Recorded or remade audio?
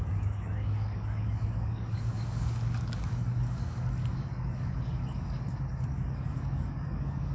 remade